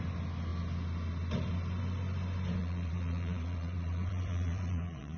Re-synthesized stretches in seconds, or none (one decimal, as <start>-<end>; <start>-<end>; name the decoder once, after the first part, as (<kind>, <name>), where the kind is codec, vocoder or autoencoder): 2.6-5.2 (vocoder, Vocos)